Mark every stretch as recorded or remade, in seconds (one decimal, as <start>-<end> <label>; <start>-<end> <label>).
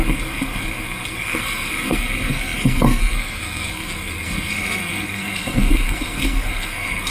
0.0-7.1 remade